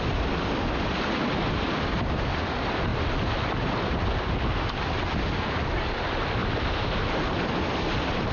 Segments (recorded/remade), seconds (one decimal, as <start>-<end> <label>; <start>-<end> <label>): 0.0-8.3 recorded